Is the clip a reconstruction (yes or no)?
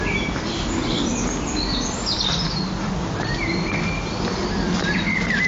no